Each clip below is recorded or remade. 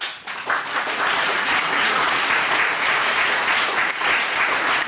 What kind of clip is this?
remade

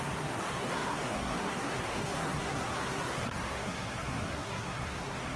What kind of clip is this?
remade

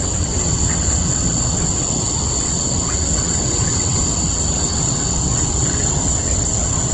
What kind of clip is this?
remade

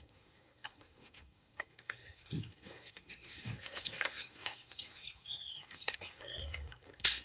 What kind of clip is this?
remade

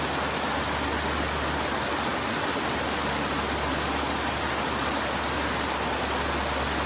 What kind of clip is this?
recorded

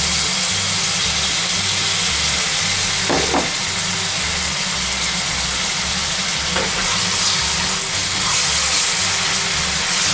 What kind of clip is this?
recorded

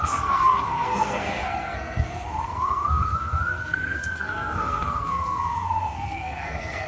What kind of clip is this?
remade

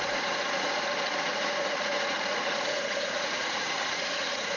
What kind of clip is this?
remade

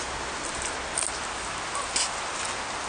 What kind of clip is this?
recorded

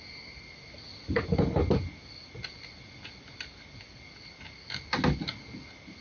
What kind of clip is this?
recorded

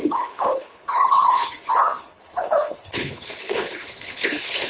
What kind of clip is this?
remade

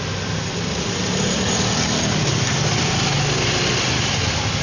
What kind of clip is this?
recorded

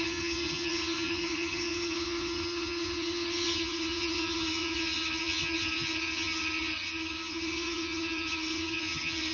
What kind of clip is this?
remade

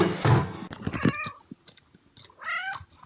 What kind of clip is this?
recorded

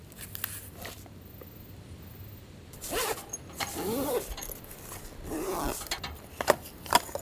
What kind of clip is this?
recorded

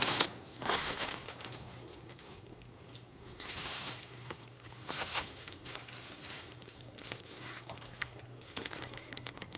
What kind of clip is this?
remade